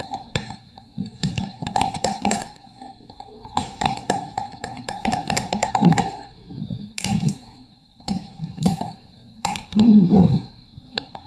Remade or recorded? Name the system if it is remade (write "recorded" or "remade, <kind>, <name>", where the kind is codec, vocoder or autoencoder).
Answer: remade, codec, SNAC